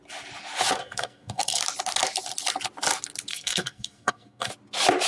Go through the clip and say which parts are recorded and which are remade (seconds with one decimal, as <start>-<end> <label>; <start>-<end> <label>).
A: 0.0-0.8 recorded; 0.8-1.6 remade; 1.6-3.3 recorded; 3.3-4.5 remade; 4.5-5.1 recorded